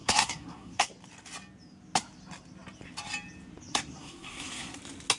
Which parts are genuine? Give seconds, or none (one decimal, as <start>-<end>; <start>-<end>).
0.9-3.7; 4.8-5.2